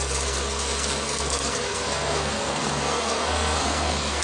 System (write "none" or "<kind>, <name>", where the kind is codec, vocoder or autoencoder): codec, SNAC